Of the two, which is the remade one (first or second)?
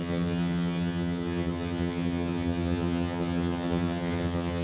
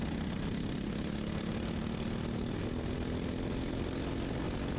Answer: first